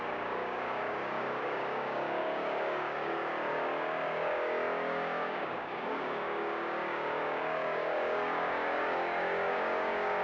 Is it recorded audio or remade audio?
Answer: remade